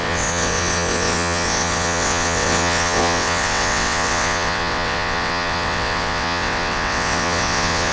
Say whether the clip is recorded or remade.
remade